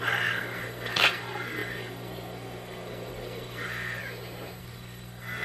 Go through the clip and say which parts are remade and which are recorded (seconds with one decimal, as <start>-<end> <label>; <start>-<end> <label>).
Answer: 0.0-4.0 remade; 4.0-4.6 recorded; 4.6-5.4 remade